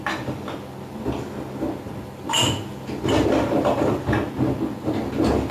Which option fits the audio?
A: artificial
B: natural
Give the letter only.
B